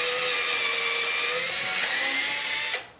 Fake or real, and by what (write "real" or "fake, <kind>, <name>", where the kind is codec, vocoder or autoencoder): real